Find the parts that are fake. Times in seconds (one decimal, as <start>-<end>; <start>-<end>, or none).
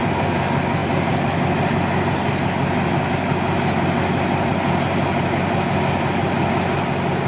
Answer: none